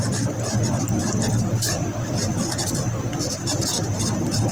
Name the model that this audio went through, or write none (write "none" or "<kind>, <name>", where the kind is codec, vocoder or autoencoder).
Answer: none